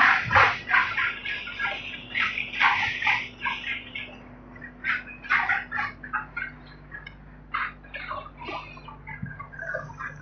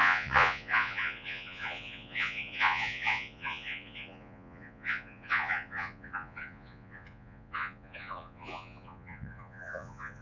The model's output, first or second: second